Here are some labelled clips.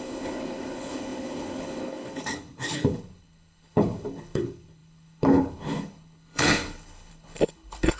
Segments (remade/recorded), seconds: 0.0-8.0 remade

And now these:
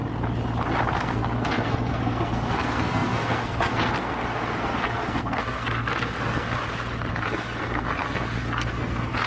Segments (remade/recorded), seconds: 0.0-0.9 recorded; 0.9-6.6 remade; 6.6-7.1 recorded; 7.1-9.3 remade

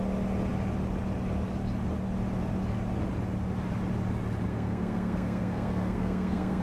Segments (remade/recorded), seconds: 0.0-4.5 recorded; 4.5-6.6 remade

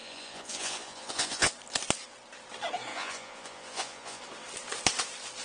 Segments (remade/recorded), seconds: 0.0-1.5 remade; 1.5-2.9 recorded; 2.9-4.2 remade; 4.2-5.4 recorded

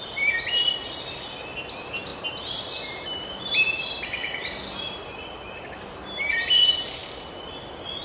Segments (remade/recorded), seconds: 0.0-2.1 recorded; 2.1-5.2 remade; 5.2-8.0 recorded

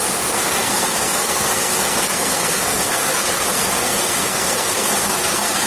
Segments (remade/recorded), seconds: 0.0-5.7 remade